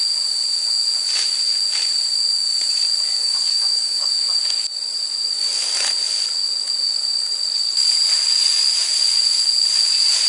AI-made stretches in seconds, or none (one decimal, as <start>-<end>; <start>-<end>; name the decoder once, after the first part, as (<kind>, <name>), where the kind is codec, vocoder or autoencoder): 3.2-4.1 (codec, DAC)